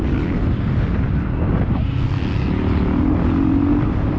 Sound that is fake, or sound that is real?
real